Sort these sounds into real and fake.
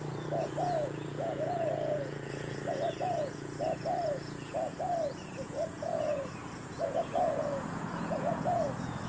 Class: fake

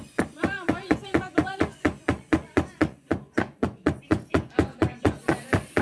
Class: fake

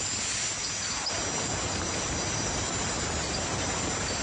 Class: real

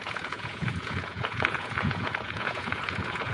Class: fake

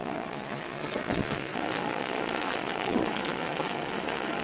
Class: fake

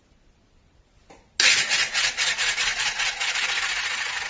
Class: real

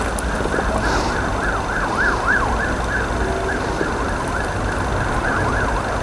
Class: real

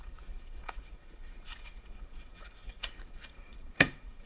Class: fake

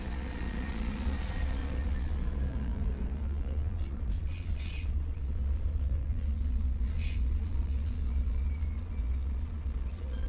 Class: fake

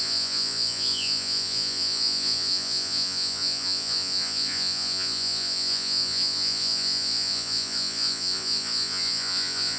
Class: fake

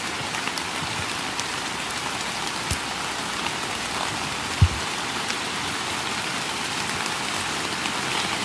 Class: real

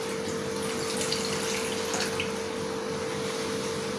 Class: real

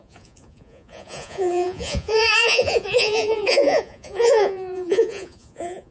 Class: fake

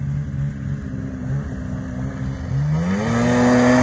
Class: real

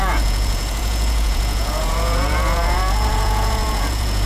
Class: fake